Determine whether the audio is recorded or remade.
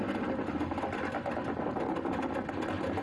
recorded